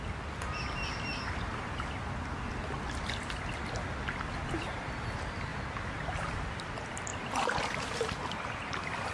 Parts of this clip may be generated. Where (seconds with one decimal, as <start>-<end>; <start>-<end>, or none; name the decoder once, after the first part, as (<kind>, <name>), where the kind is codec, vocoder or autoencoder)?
7.1-8.6 (vocoder, BigVGAN v2)